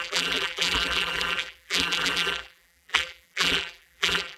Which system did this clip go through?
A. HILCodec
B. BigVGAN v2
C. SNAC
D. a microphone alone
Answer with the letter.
B